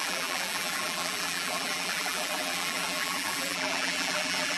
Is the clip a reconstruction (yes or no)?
yes